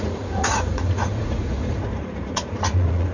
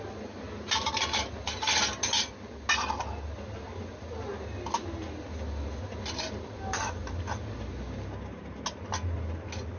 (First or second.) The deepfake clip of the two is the first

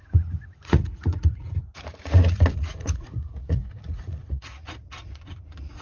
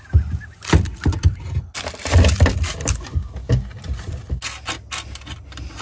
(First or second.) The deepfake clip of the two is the first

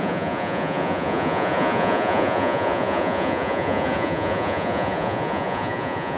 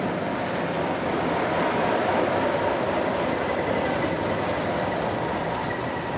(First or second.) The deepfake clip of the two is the first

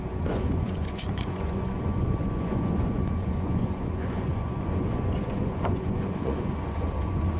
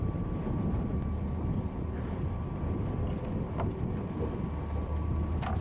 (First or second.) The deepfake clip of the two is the first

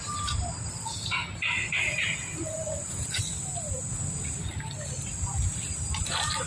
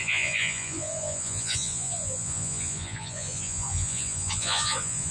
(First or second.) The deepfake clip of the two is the second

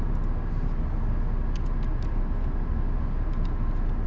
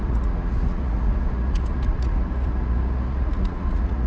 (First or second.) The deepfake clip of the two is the second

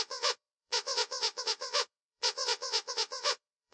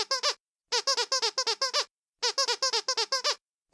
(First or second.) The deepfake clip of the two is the first